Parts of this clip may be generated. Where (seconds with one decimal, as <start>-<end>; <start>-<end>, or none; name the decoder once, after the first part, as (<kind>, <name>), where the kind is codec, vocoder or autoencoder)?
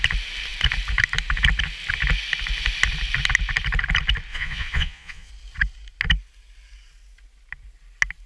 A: 4.3-5.3 (vocoder, Vocos)